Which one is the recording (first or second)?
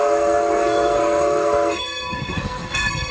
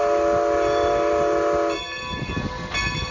second